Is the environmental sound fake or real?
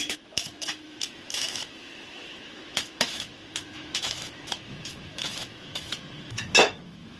fake